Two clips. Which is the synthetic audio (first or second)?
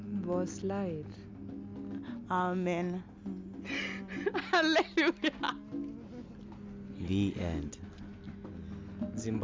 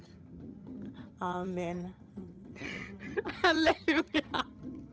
second